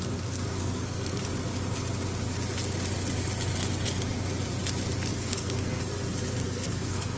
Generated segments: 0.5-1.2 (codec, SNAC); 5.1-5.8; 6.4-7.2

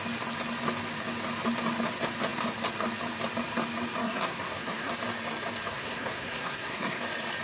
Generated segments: 4.0-4.9 (codec, SNAC); 5.7-7.0

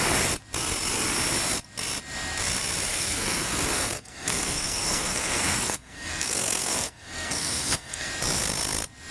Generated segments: 2.9-8.1 (codec, SNAC)

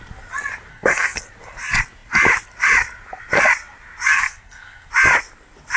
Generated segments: 0.7-1.2 (codec, SNAC); 4.1-4.9

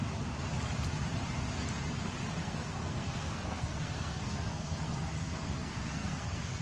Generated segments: 2.4-6.6 (codec, SNAC)

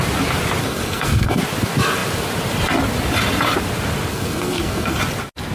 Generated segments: 0.6-1.4 (codec, SNAC); 4.1-5.0

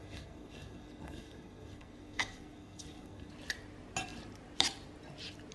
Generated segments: 0.0-3.3 (codec, SNAC)